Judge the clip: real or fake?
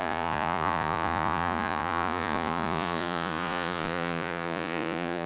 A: fake